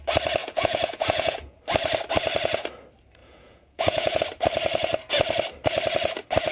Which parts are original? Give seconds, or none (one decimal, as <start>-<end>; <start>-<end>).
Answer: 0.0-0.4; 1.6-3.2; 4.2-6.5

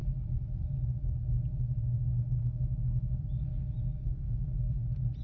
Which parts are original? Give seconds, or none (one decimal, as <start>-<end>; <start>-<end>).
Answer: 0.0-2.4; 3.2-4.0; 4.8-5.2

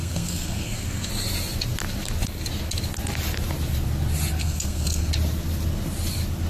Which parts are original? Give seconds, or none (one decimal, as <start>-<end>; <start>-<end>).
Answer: 1.1-4.4; 5.1-6.5

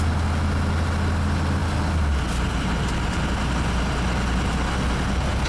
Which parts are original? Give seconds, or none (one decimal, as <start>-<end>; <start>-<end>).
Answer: 0.0-5.5

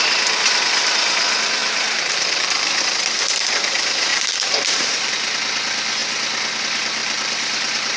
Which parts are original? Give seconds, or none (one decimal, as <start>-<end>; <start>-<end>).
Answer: 0.0-1.6; 2.8-4.1; 5.1-7.0